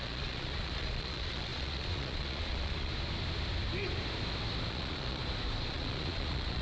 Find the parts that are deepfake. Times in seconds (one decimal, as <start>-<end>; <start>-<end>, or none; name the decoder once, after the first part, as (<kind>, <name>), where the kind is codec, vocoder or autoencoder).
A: 0.0-2.9 (vocoder, Vocos); 4.7-5.2; 5.7-6.6